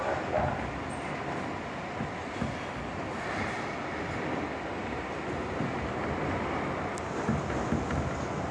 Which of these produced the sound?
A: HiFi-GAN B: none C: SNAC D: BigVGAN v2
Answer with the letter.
B